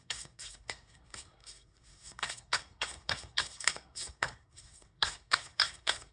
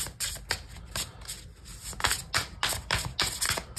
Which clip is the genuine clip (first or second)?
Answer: second